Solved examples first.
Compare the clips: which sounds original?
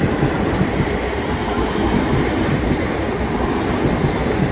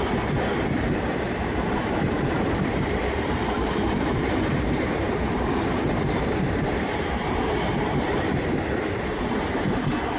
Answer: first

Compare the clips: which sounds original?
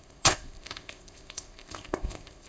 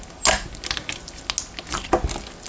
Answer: second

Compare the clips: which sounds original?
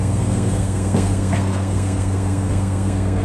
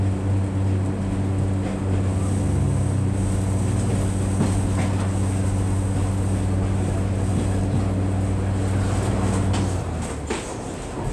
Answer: second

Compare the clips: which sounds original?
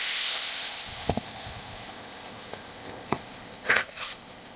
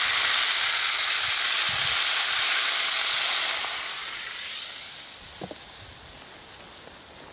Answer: second